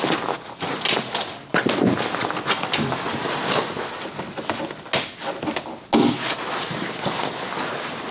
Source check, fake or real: real